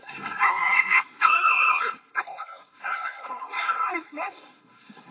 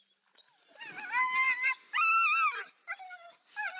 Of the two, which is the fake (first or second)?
first